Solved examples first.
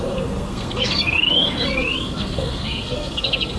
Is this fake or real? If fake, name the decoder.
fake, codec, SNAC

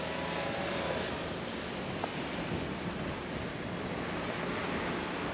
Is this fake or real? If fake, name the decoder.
real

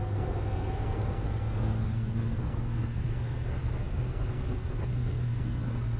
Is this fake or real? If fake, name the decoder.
fake, codec, SNAC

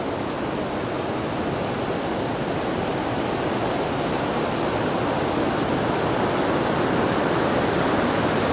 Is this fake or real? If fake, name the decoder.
real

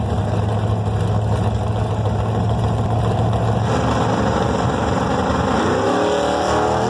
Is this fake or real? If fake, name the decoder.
real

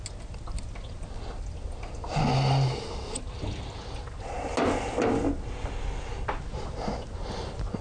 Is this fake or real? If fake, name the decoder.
real